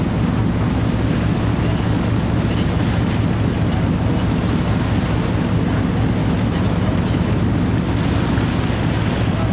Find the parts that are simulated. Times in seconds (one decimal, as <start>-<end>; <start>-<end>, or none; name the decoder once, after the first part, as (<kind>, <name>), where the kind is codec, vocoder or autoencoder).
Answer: 6.2-7.4 (autoencoder, DAC-VAE)